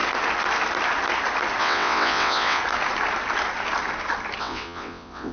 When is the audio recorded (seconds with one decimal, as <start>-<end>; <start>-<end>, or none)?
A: 0.0-1.6; 2.6-4.4